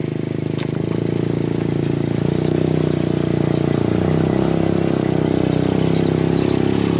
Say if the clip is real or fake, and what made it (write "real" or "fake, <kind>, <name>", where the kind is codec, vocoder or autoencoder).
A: real